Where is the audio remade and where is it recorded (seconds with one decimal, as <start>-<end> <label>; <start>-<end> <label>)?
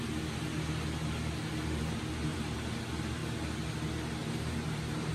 0.0-2.3 recorded; 2.3-2.8 remade; 2.8-4.2 recorded; 4.2-5.1 remade